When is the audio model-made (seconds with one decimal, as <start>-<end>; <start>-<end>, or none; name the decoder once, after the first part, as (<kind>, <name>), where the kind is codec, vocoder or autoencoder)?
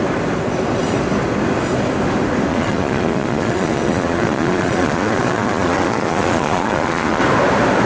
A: 2.5-7.2 (vocoder, Vocos)